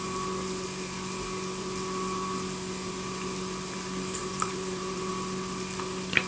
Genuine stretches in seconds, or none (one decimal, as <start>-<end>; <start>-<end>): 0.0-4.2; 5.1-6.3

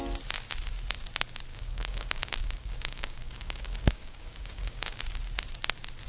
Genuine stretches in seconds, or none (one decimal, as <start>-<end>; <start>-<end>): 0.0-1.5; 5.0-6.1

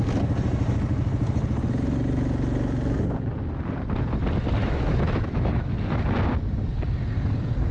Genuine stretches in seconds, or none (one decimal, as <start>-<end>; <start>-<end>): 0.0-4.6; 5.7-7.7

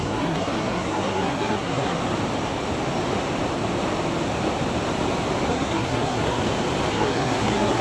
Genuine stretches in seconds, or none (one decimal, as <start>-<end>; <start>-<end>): 2.0-5.5; 6.4-6.9